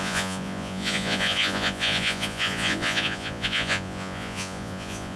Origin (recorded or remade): remade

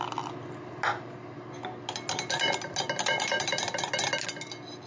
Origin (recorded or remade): recorded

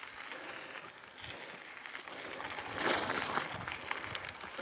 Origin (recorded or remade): recorded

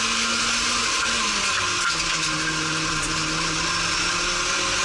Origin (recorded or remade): recorded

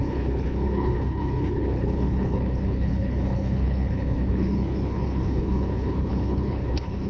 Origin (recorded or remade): remade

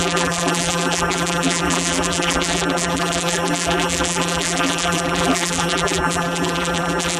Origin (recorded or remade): remade